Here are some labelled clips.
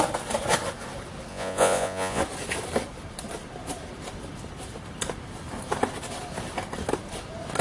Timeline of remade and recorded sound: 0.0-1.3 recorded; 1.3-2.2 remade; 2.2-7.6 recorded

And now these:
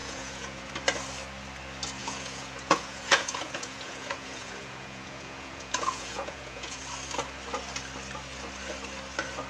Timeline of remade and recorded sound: 0.0-0.7 remade; 0.7-2.0 recorded; 2.0-6.8 remade; 6.8-9.5 recorded